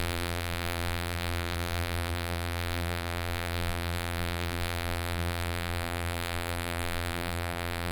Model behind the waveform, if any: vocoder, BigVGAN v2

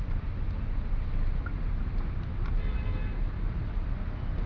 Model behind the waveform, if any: none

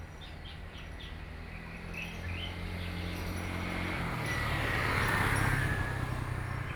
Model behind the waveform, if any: none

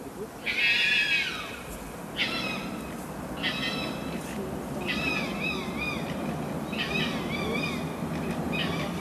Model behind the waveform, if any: none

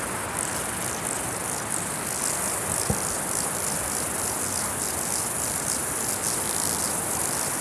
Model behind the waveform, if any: none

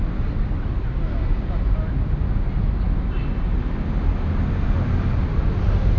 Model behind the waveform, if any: none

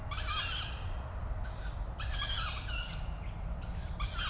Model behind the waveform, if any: none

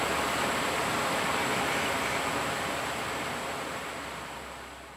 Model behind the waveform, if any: none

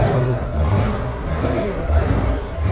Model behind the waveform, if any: codec, SNAC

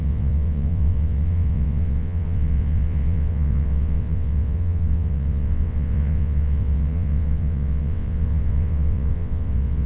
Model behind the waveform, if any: vocoder, WaveNeXt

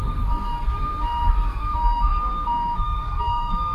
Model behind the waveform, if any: codec, SNAC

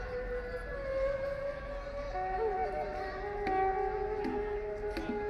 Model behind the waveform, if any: none